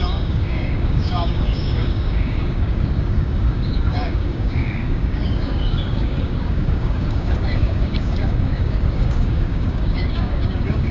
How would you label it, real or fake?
fake